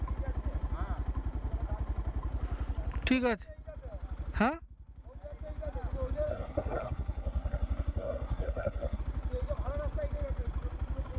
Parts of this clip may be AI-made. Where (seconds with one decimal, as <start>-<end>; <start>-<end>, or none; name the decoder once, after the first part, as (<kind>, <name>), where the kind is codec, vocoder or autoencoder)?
6.3-9.0 (codec, SNAC)

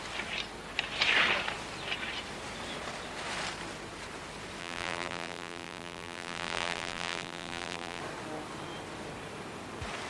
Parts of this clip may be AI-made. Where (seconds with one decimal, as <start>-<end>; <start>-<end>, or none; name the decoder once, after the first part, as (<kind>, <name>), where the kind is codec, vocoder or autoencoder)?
4.6-8.0 (vocoder, BigVGAN v2)

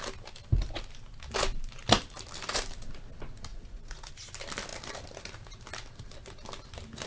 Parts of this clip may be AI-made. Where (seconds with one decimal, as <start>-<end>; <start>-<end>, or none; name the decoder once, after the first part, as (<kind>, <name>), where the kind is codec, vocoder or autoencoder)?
3.5-4.1 (vocoder, Vocos)

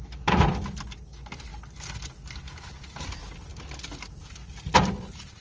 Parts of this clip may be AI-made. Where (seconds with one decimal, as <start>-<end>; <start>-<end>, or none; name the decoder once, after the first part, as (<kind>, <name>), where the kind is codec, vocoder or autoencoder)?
none